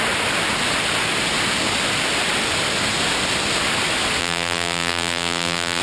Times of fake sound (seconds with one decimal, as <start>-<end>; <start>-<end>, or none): 4.2-5.8